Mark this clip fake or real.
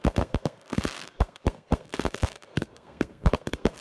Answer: fake